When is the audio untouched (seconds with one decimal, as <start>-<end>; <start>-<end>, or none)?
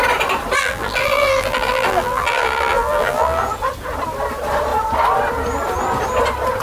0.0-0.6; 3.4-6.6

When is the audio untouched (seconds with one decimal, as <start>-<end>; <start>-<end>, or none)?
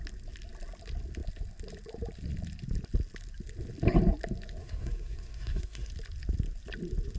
0.0-4.6; 5.9-7.2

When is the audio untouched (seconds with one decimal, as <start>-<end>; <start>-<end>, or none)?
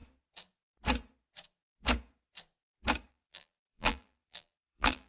0.0-3.1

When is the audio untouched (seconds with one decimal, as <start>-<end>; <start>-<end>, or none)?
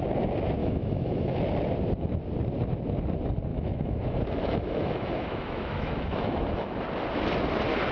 0.0-0.6; 1.4-3.5; 6.7-7.9